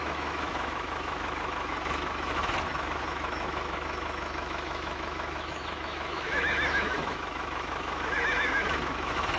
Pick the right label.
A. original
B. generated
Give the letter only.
B